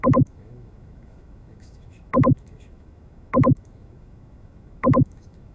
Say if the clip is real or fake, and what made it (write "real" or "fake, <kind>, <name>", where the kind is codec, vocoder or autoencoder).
fake, autoencoder, DAC-VAE